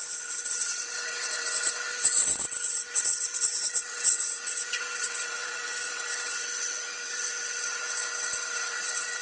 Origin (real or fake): fake